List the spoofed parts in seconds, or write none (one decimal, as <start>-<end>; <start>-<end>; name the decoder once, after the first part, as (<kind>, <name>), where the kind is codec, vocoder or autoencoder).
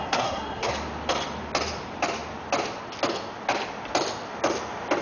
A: 0.0-0.7 (codec, SNAC)